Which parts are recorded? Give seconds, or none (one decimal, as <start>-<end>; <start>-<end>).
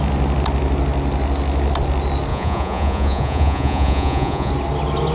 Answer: 0.0-2.3; 4.5-5.1